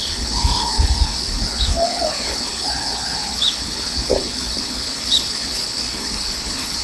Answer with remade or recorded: remade